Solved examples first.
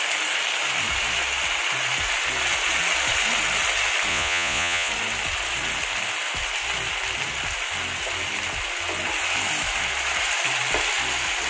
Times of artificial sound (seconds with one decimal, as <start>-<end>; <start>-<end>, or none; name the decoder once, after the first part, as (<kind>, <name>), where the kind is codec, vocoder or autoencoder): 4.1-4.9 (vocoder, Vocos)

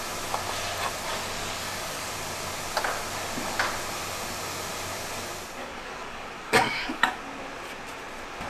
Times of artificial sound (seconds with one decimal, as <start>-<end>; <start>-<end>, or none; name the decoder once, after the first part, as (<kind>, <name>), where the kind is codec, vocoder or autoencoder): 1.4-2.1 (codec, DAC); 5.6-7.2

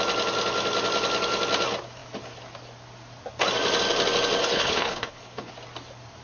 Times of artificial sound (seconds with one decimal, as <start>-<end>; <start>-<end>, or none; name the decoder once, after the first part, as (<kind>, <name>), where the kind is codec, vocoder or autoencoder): 4.4-5.5 (codec, HILCodec)

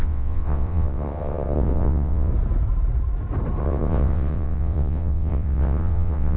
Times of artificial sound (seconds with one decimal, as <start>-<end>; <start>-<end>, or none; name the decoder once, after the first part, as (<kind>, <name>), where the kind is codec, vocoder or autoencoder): 0.0-2.3 (vocoder, WaveNeXt); 3.6-6.4

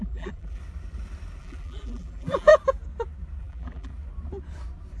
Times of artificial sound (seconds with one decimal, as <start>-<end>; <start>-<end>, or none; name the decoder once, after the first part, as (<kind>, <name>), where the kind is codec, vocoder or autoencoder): 0.0-0.6 (vocoder, BigVGAN v2); 1.4-2.5; 3.4-3.9